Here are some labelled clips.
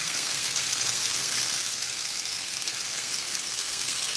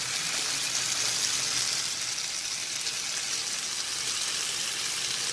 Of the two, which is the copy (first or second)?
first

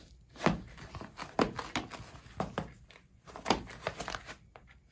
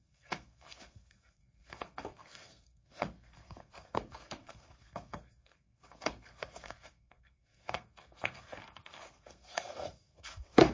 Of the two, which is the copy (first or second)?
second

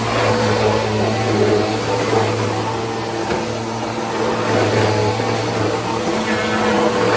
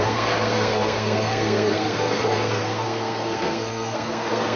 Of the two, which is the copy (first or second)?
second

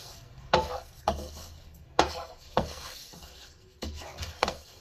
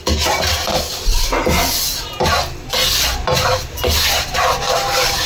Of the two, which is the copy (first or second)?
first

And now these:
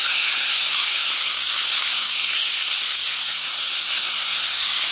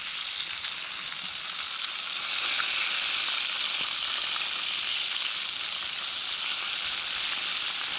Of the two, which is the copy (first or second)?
first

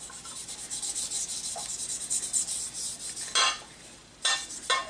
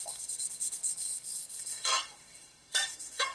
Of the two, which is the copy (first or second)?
second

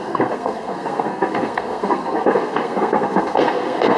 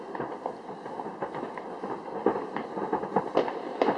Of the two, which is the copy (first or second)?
first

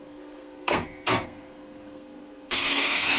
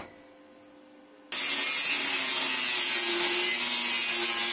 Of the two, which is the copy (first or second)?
first